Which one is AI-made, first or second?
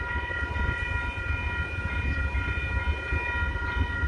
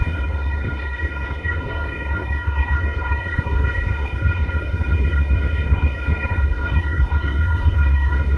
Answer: second